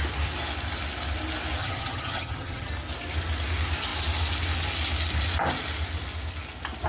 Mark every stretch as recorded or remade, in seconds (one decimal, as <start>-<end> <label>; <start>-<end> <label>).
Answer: 0.0-1.6 recorded; 1.6-2.7 remade; 2.7-6.9 recorded